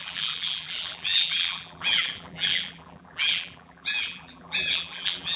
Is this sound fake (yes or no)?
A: yes